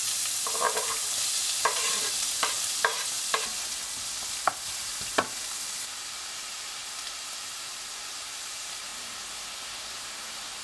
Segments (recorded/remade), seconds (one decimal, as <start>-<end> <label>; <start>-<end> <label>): 0.0-2.9 remade; 2.9-4.8 recorded; 4.8-6.8 remade; 6.8-7.7 recorded; 7.7-10.6 remade